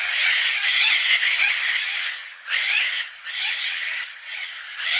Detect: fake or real fake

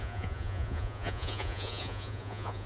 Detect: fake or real fake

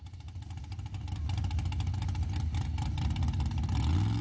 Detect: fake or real real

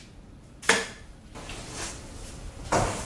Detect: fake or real real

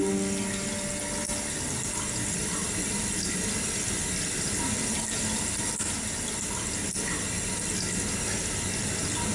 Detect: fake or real real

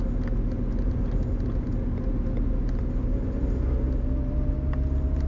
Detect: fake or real real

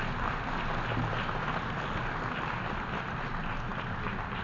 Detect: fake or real real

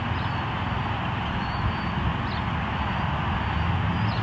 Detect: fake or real real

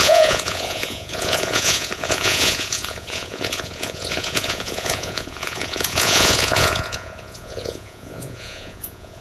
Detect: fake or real fake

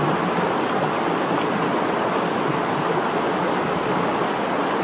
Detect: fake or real real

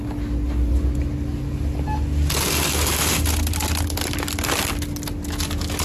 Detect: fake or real real